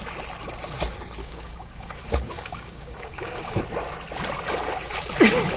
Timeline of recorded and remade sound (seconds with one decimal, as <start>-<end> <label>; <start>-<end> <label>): 0.0-1.2 recorded; 1.2-3.6 remade; 3.6-5.6 recorded